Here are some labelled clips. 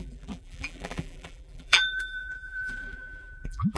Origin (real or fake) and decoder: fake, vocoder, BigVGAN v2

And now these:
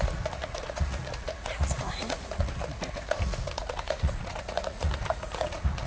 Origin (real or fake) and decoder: fake, vocoder, Vocos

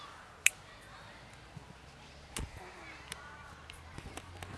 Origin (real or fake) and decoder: real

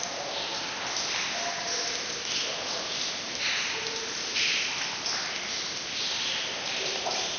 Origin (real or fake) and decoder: real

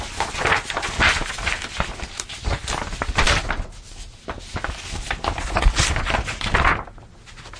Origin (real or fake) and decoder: real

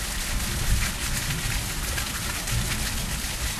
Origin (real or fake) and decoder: real